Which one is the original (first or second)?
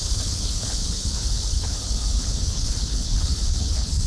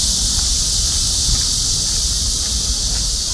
second